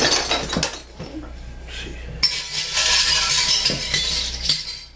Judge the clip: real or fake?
real